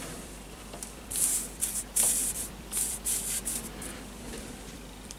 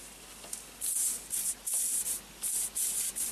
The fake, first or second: first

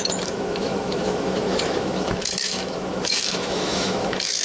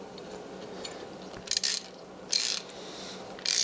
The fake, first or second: first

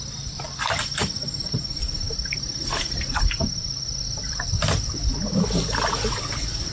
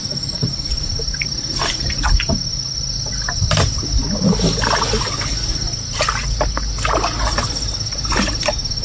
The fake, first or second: first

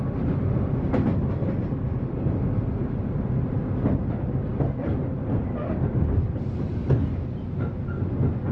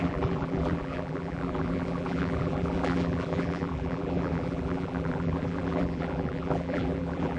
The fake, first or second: second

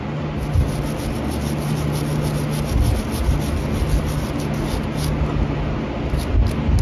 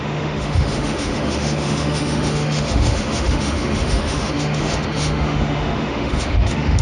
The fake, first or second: second